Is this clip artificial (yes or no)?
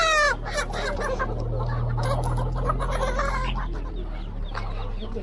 no